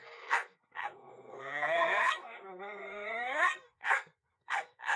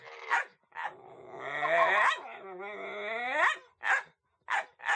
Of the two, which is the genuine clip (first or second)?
second